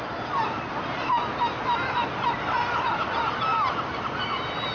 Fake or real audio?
real